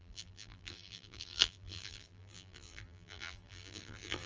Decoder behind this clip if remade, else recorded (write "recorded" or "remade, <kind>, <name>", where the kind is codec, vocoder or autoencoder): remade, vocoder, BigVGAN v2